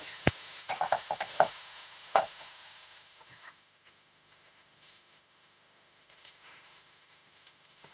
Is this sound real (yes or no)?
no